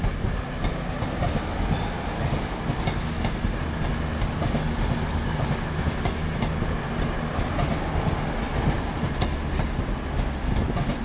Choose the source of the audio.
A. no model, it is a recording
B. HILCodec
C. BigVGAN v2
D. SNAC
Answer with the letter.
A